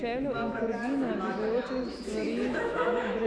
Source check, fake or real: fake